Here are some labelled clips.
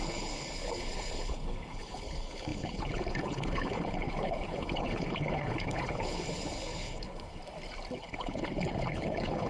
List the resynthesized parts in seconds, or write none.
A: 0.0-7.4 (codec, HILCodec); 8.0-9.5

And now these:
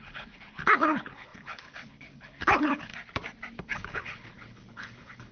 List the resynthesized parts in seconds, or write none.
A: 0.0-2.9 (codec, HILCodec); 3.6-5.3

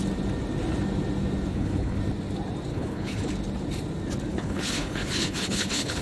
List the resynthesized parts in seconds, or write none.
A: 1.5-2.0 (codec, HILCodec); 2.7-3.3; 4.3-6.0

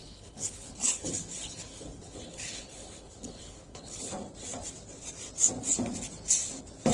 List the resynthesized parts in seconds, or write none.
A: 0.0-4.1 (codec, HILCodec)